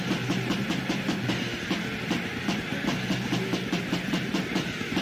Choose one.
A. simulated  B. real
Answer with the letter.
B